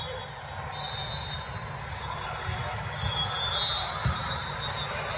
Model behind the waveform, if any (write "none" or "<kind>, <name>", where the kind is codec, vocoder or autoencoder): none